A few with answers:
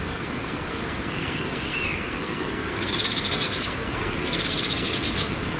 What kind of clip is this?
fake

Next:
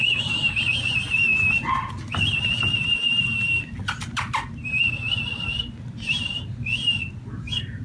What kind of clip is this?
real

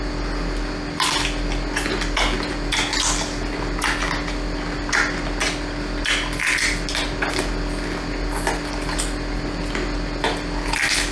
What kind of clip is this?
real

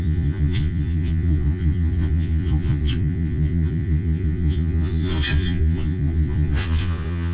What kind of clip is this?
fake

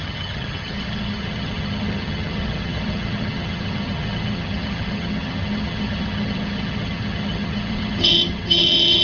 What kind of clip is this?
fake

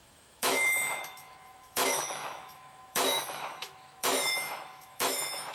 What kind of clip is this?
fake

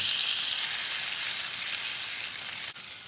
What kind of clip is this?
real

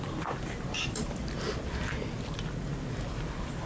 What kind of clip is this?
fake